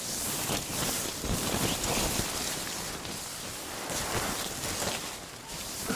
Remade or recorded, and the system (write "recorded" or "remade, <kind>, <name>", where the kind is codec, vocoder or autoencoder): recorded